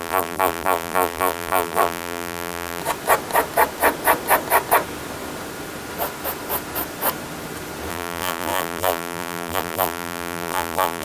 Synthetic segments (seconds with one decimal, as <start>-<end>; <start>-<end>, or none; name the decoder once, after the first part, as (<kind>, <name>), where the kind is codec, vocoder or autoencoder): 0.0-2.8 (vocoder, BigVGAN v2); 7.9-11.0